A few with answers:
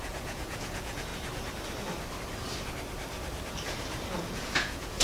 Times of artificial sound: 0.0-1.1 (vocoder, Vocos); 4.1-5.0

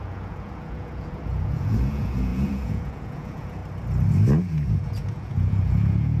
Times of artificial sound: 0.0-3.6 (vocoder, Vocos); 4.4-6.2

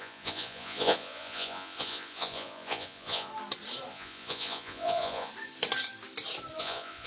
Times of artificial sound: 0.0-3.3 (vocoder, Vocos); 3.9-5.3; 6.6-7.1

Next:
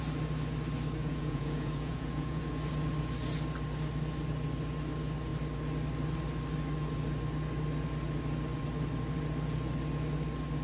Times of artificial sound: 1.0-2.4 (vocoder, Vocos)

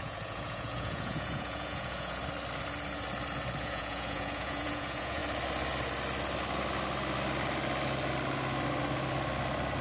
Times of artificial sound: 0.0-2.2 (vocoder, Vocos); 3.6-5.2

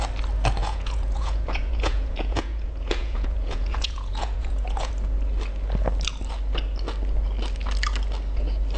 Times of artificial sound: 0.6-4.9 (vocoder, Vocos)

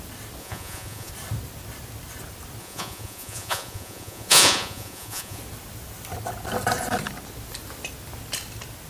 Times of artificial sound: 0.4-1.1 (vocoder, Vocos); 2.6-5.4